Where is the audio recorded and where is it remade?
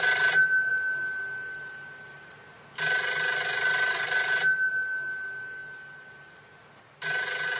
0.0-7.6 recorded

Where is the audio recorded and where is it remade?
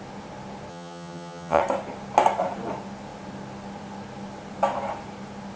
0.0-0.7 recorded; 0.7-1.6 remade; 1.6-5.6 recorded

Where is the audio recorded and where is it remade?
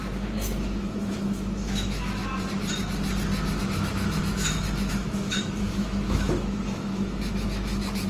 0.0-2.2 remade; 2.2-3.6 recorded; 3.6-8.1 remade